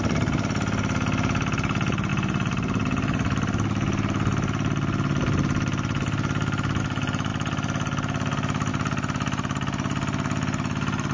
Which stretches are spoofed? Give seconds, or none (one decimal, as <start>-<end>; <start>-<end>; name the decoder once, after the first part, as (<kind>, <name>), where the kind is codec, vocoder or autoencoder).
none